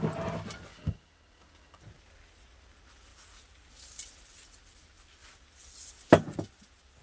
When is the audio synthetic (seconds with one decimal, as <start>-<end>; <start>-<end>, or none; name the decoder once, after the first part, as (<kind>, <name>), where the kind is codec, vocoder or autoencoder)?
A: 0.7-1.8 (codec, DAC)